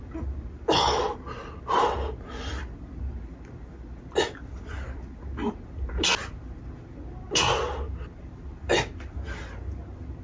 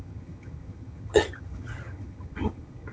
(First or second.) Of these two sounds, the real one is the first